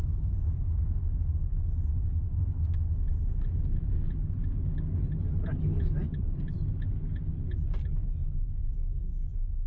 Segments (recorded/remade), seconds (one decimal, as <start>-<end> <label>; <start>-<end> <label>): 0.0-9.7 recorded